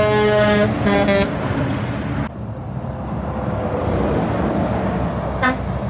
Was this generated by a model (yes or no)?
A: no